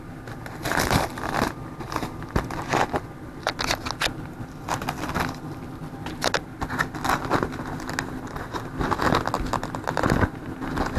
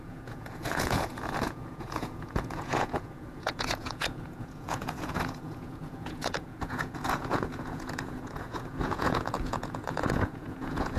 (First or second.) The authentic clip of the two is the first